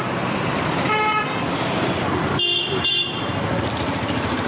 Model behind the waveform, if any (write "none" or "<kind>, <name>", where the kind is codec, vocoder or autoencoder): none